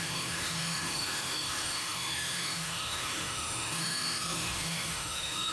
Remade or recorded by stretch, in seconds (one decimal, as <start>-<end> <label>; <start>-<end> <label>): 0.0-5.5 remade